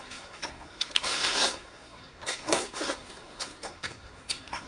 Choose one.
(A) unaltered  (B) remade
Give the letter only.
B